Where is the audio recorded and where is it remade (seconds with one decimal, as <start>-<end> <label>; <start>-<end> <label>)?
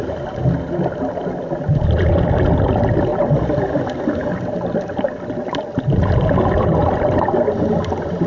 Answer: 0.0-0.4 remade; 0.4-2.6 recorded; 2.6-6.8 remade; 6.8-7.8 recorded; 7.8-8.3 remade